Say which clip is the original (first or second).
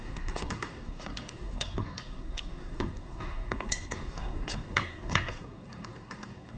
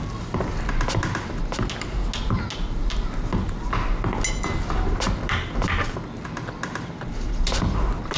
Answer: second